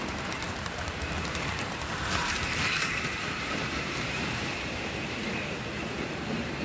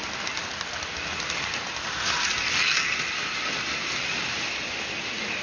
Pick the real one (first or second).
second